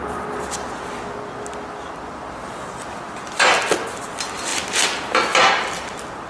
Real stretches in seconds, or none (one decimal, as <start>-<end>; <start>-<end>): 0.0-6.3